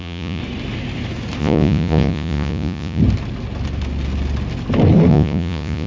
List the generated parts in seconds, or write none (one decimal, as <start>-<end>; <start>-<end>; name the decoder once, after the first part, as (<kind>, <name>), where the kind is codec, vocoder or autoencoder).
0.0-0.4 (vocoder, Vocos); 1.4-3.0; 5.1-5.9